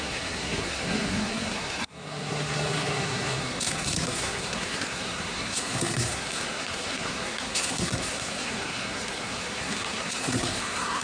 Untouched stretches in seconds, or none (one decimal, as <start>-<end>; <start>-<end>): none